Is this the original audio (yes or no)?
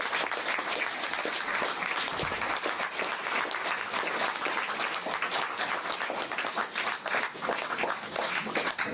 yes